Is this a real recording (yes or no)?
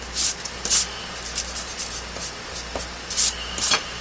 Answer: yes